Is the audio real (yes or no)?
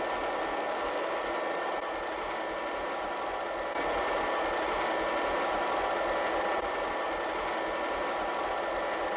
yes